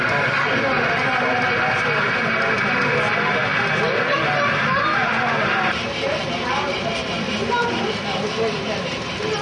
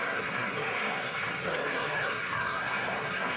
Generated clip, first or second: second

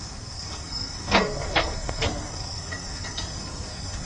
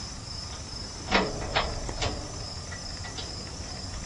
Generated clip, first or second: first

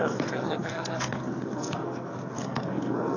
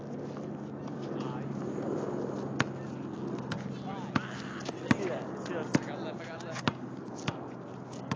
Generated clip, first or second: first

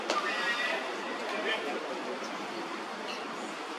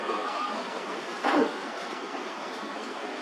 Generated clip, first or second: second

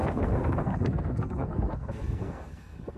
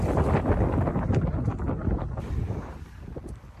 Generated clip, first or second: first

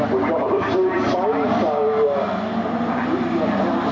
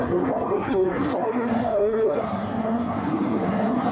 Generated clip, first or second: second